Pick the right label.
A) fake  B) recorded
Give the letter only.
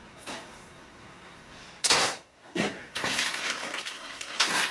A